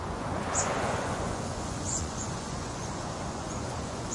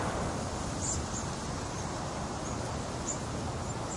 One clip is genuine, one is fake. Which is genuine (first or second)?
second